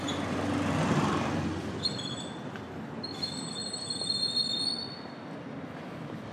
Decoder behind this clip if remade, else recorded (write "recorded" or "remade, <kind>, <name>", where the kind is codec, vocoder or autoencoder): remade, vocoder, BigVGAN v2